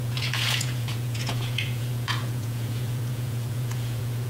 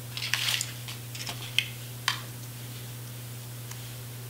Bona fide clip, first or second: second